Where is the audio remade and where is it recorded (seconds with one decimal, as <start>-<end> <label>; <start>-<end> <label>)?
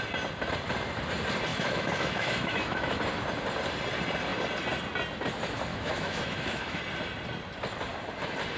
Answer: 0.0-1.5 recorded; 1.5-3.0 remade; 3.0-5.7 recorded; 5.7-6.8 remade; 6.8-8.6 recorded